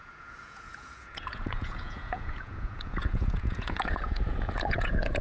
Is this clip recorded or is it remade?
remade